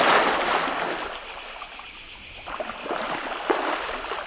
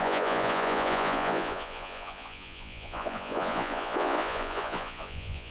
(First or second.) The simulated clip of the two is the second